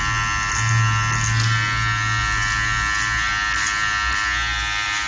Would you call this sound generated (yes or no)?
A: no